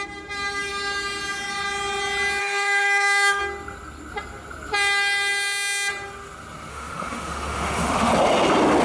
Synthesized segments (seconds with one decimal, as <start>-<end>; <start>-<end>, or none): 2.4-3.4; 6.7-8.1